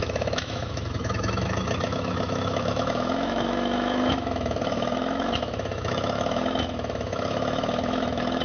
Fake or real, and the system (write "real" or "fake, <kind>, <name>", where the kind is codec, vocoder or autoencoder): fake, autoencoder, DAC-VAE